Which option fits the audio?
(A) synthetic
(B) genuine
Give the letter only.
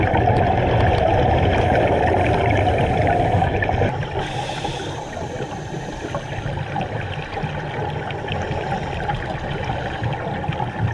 B